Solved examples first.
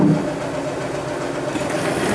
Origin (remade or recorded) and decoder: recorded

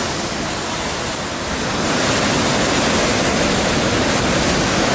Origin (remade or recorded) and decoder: recorded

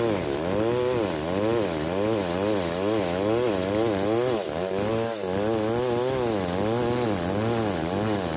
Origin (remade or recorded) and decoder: recorded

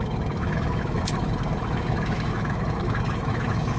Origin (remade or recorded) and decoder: remade, autoencoder, DAC-VAE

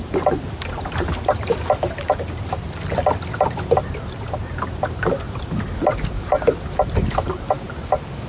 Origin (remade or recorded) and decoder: recorded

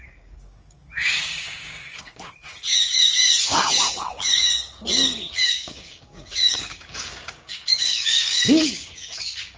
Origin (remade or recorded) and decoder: remade, codec, DAC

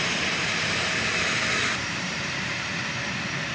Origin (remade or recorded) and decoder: remade, vocoder, BigVGAN v2